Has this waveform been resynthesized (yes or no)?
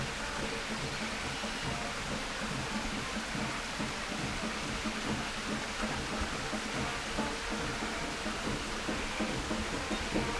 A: no